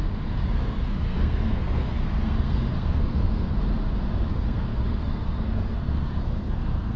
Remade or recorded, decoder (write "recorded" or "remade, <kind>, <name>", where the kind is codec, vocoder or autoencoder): remade, codec, SNAC